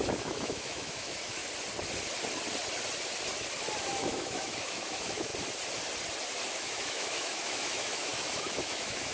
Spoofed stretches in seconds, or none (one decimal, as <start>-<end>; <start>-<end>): 0.0-1.4; 3.8-5.3; 6.5-9.1